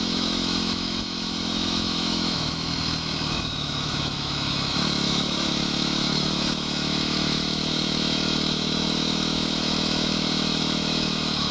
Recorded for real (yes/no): no